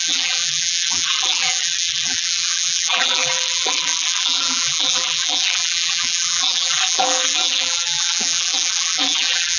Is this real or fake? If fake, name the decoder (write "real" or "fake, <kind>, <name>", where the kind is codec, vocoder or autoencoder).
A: fake, vocoder, BigVGAN v2